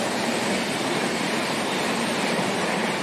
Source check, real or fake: real